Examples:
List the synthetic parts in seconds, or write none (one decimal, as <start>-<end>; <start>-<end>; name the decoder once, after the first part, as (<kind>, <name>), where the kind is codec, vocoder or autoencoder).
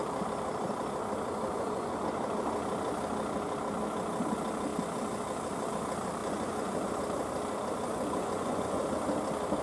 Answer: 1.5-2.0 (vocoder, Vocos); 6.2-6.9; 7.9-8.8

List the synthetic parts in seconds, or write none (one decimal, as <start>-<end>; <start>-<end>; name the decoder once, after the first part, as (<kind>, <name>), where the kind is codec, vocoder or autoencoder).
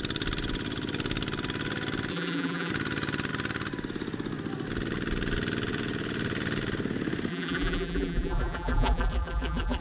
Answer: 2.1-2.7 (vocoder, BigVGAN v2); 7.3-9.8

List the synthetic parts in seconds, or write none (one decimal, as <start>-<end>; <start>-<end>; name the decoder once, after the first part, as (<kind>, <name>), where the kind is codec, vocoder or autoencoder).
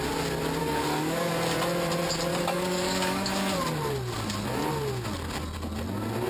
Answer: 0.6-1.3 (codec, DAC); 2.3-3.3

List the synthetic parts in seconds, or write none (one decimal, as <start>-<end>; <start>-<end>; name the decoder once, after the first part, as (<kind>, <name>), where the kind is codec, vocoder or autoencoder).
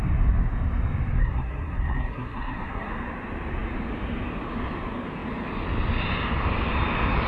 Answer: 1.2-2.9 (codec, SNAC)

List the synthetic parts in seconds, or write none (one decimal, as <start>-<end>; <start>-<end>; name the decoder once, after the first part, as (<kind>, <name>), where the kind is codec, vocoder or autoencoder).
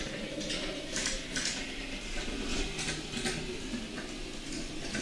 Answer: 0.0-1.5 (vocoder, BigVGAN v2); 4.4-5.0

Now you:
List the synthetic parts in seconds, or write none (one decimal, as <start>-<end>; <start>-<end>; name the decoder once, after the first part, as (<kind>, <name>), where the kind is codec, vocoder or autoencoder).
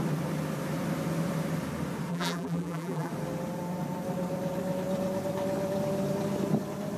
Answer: 2.1-3.1 (vocoder, BigVGAN v2)